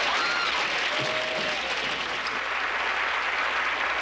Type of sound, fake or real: real